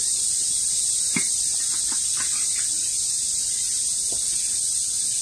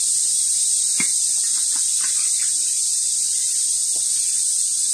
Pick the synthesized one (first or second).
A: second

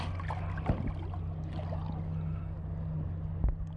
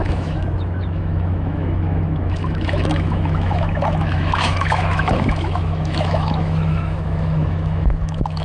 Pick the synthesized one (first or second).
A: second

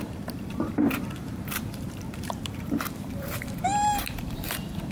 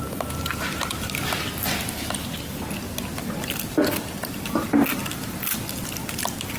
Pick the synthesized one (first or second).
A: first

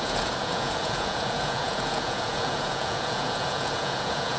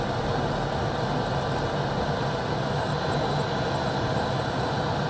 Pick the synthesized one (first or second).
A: first